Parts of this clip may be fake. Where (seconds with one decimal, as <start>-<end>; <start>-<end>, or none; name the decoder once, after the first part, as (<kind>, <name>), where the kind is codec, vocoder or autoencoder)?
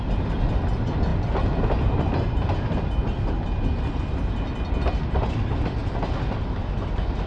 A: none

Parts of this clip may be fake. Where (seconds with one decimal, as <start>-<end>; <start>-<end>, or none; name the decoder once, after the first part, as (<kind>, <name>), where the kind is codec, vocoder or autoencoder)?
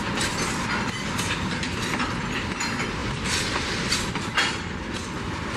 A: 3.0-4.0 (vocoder, BigVGAN v2)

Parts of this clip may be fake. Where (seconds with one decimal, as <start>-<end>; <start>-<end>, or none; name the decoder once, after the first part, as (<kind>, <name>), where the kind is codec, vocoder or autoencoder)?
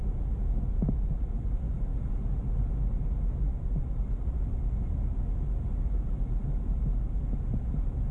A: none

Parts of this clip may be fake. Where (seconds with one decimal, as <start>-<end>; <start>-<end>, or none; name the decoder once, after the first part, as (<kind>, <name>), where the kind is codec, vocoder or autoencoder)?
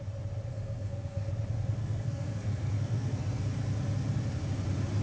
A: 0.5-1.3 (codec, SNAC); 1.8-3.4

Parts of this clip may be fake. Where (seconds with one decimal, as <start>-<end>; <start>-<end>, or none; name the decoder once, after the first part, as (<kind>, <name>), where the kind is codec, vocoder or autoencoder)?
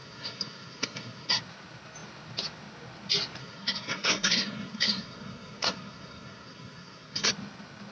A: 0.0-1.4 (codec, SNAC); 3.4-7.3